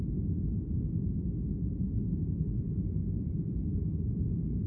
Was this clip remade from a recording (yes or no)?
no